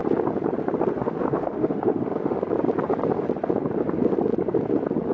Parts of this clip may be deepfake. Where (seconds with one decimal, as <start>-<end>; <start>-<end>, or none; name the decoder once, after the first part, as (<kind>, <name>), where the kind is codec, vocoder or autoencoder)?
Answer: 1.0-2.4 (autoencoder, DAC-VAE)